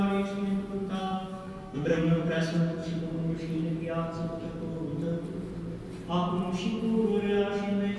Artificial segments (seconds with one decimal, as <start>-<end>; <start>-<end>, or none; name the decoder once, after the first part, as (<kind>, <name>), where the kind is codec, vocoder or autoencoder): 1.0-2.2 (codec, SNAC)